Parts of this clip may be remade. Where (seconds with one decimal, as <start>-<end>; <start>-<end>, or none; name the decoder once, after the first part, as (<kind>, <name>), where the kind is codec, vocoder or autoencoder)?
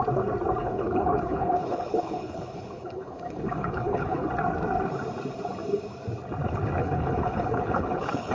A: 0.6-4.3 (codec, HILCodec); 6.8-8.3